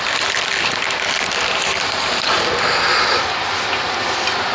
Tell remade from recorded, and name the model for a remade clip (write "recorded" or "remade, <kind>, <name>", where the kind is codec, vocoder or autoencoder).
recorded